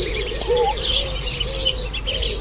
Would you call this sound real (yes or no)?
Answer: yes